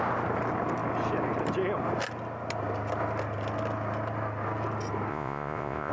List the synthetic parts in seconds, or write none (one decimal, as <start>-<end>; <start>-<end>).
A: 5.1-5.9